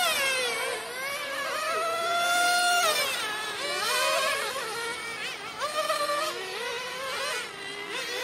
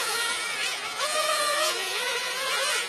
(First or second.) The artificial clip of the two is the second